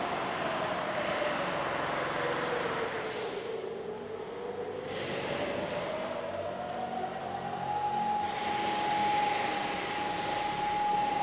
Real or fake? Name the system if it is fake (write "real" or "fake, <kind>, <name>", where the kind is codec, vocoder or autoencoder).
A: real